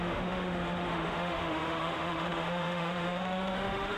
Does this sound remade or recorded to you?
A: remade